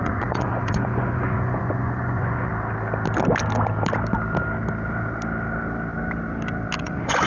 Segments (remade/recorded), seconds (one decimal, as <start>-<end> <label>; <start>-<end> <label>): 0.0-2.5 remade; 2.5-6.8 recorded; 6.8-7.3 remade